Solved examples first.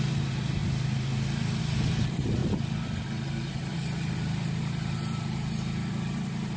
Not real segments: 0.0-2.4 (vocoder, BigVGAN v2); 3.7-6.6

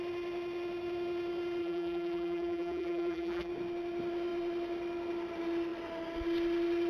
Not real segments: 1.6-3.5 (vocoder, BigVGAN v2)

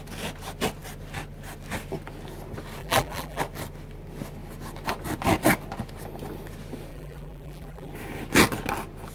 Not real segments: 2.8-3.4 (vocoder, BigVGAN v2); 6.9-7.9

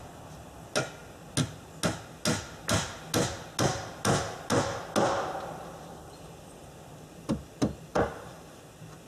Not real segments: 7.9-8.7 (vocoder, BigVGAN v2)